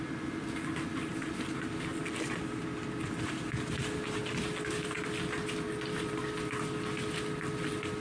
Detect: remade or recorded recorded